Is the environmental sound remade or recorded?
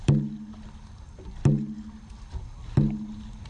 recorded